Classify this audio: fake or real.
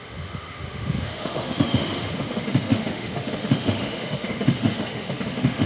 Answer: fake